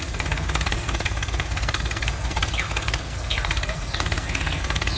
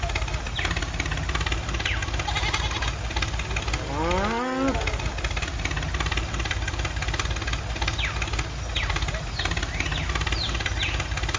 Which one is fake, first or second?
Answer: first